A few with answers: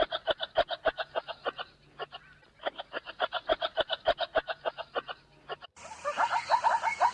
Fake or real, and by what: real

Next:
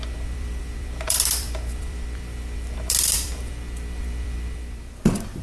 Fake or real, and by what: fake, vocoder, BigVGAN v2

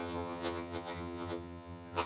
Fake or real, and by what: fake, vocoder, HiFi-GAN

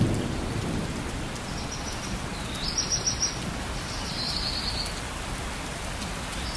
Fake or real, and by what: real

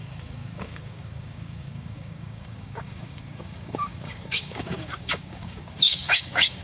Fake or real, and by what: fake, codec, DAC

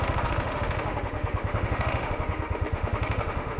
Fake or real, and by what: fake, autoencoder, DAC-VAE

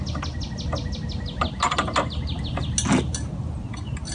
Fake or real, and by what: real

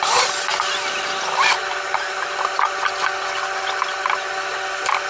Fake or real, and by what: real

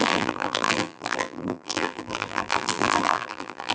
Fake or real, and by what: fake, vocoder, BigVGAN v2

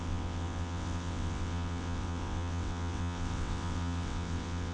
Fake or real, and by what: fake, vocoder, WaveNeXt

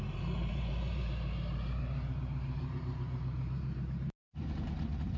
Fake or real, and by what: fake, vocoder, BigVGAN v2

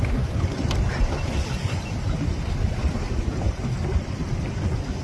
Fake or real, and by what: real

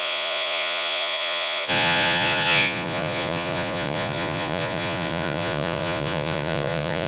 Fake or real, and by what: fake, vocoder, Vocos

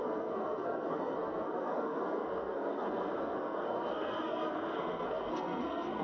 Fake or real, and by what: fake, codec, SNAC